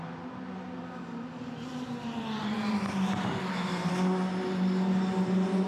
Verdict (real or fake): real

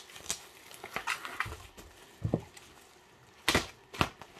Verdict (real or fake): real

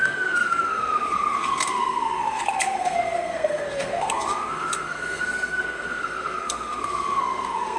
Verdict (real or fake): fake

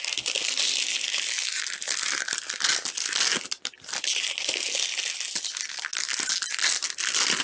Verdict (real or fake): real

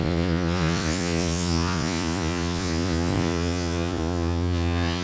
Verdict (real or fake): fake